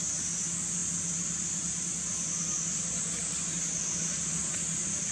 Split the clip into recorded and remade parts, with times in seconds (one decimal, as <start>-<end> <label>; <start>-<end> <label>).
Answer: 0.0-5.1 recorded